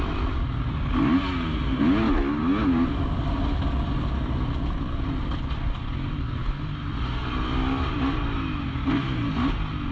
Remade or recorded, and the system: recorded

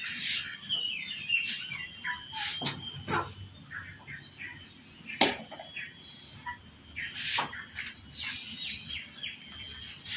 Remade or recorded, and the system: recorded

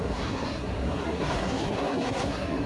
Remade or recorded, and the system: remade, codec, SNAC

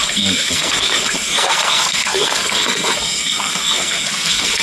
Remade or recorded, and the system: remade, codec, SNAC